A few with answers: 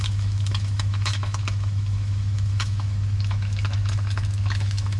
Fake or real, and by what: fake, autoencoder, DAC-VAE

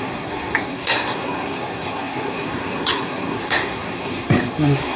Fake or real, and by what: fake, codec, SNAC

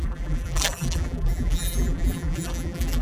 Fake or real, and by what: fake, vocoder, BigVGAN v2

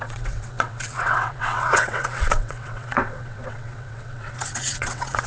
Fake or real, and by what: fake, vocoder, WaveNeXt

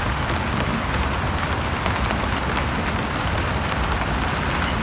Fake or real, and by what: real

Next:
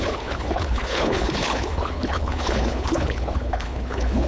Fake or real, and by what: fake, codec, HILCodec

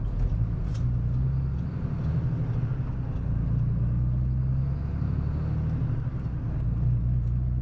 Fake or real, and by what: real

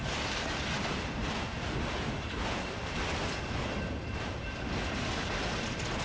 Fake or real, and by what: real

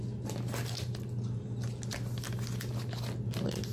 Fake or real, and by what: real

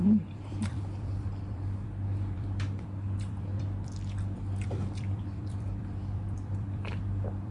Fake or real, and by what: fake, vocoder, BigVGAN v2